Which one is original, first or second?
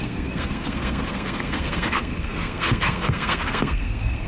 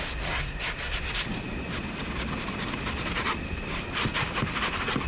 second